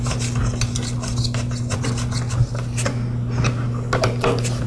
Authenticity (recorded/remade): recorded